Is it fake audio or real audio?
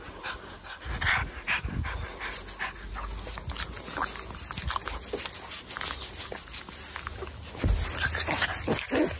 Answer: real